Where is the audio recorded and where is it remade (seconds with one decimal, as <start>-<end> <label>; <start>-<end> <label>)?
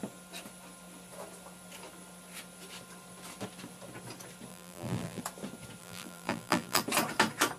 0.0-4.5 recorded; 4.5-5.2 remade; 5.2-5.8 recorded; 5.8-6.8 remade; 6.8-7.6 recorded